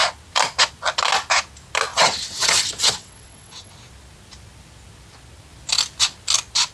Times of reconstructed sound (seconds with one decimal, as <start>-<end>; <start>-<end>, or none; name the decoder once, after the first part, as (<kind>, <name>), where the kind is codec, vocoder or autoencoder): 1.9-3.7 (vocoder, WaveNeXt)